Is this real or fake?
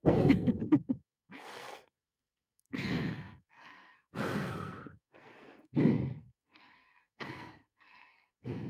fake